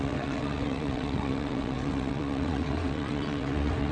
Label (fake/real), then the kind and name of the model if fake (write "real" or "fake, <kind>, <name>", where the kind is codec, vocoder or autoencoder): fake, vocoder, WaveNeXt